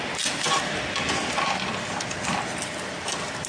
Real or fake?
real